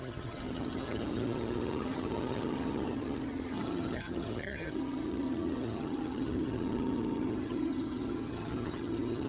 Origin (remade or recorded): remade